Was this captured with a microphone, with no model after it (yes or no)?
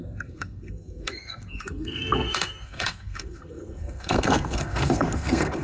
no